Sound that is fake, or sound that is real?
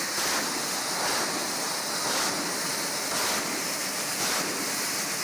real